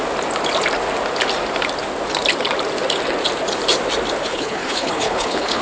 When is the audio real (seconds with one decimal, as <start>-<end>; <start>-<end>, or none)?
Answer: 0.0-4.2